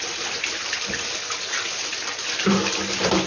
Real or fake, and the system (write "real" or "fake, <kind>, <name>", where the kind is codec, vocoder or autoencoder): real